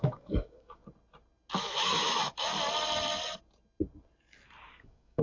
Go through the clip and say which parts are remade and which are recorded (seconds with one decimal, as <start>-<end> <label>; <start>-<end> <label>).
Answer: 0.0-0.8 remade; 0.8-1.6 recorded; 1.6-2.5 remade; 2.5-4.7 recorded; 4.7-5.2 remade